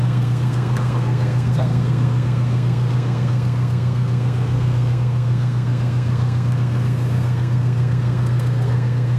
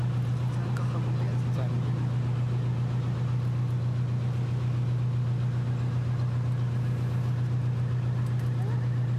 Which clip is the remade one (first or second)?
first